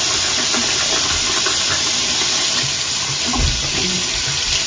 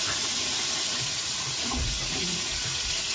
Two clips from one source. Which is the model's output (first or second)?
second